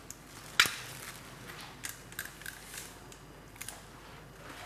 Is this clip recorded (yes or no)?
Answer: yes